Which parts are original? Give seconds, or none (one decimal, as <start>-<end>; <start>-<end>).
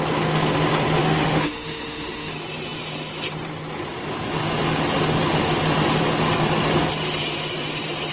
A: 0.0-1.0; 2.3-8.1